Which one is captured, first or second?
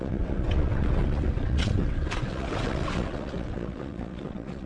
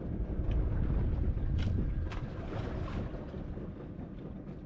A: second